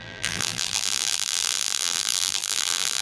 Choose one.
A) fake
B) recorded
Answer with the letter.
A